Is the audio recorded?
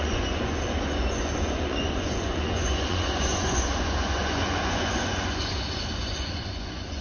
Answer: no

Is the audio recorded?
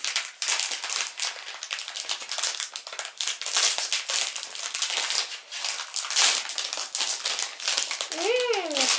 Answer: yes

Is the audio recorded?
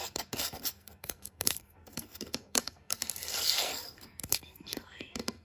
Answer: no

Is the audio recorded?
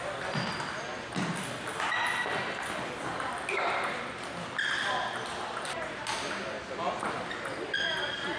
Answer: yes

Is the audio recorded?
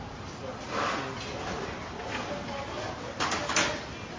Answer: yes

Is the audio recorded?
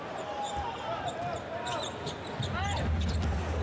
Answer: yes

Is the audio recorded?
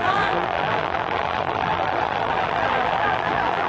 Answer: no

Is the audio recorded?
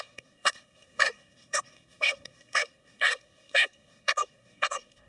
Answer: no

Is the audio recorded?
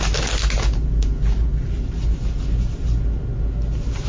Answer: yes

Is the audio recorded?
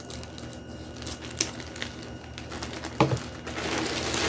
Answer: yes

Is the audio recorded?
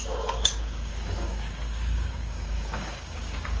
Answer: no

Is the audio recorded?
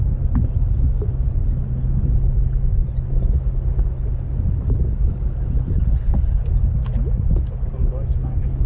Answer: yes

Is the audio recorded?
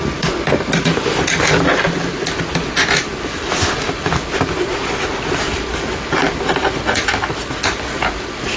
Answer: yes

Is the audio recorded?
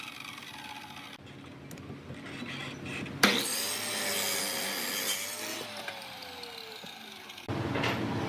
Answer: yes